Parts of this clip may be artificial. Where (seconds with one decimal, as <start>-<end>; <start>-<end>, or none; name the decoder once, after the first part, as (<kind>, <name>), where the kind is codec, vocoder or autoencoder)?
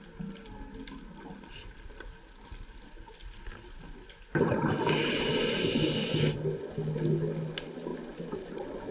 none